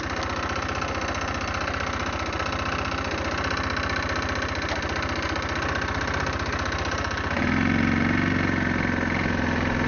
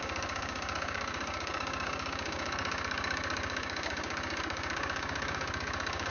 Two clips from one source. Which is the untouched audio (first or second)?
first